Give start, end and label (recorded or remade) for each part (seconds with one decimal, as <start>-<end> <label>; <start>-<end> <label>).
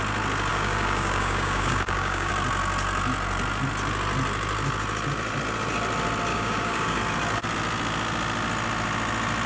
0.0-0.5 recorded; 0.5-2.3 remade; 2.3-6.3 recorded; 6.3-7.0 remade; 7.0-9.5 recorded